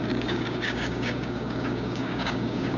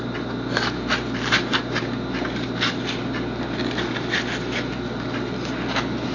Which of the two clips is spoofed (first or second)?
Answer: first